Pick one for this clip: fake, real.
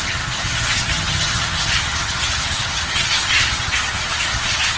fake